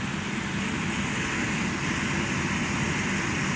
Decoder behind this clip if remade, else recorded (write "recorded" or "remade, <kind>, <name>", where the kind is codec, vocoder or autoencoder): recorded